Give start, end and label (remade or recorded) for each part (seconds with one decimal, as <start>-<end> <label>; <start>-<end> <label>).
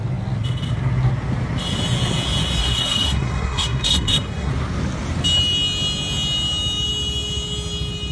0.0-2.6 recorded; 2.6-4.5 remade; 4.5-8.1 recorded